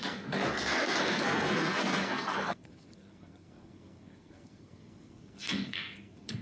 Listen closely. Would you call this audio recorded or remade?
remade